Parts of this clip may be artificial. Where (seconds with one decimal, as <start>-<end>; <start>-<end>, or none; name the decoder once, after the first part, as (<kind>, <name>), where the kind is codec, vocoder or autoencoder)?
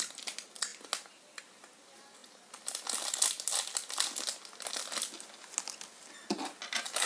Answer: none